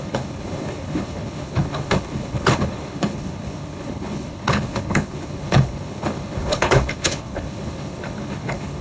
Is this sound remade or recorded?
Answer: remade